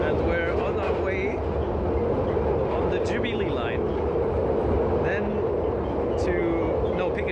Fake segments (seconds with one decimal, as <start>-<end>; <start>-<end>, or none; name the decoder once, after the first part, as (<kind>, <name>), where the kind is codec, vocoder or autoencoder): none